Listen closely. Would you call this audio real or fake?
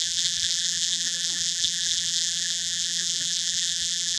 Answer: fake